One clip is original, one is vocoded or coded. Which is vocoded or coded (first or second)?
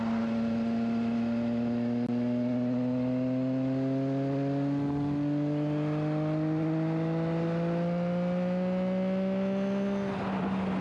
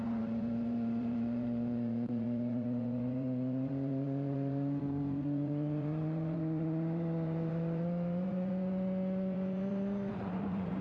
second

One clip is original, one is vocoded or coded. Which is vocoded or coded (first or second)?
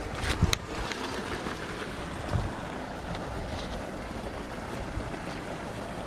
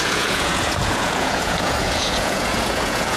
second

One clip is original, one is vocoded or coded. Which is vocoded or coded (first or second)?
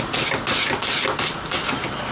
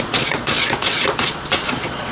second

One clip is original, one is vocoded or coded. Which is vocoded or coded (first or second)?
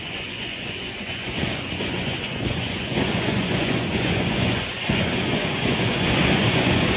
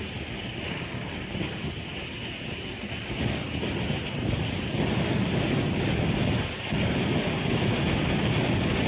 first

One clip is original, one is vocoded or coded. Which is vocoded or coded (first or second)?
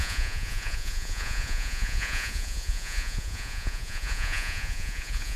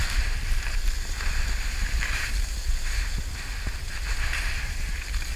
first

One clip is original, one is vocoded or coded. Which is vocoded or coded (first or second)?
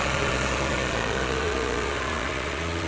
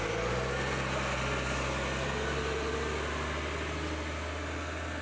first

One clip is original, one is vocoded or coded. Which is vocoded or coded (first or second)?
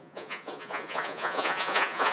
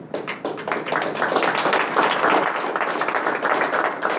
first